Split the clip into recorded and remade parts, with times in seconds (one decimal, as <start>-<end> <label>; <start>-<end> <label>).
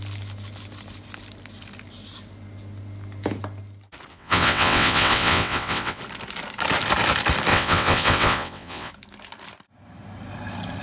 0.0-4.1 recorded; 4.1-6.0 remade; 6.0-7.5 recorded; 7.5-8.9 remade; 8.9-10.8 recorded